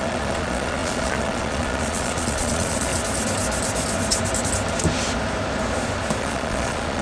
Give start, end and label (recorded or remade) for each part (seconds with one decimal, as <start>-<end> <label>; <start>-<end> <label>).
0.0-2.9 remade; 2.9-6.2 recorded; 6.2-7.0 remade